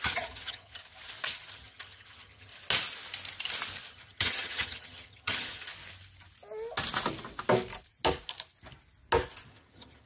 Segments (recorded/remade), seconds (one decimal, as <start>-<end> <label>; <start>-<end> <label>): 0.0-0.8 remade; 0.8-1.5 recorded; 1.5-2.5 remade; 2.5-3.9 recorded; 3.9-5.7 remade; 5.7-9.5 recorded; 9.5-10.1 remade